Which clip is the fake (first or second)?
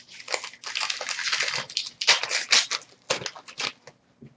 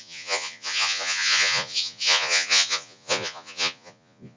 second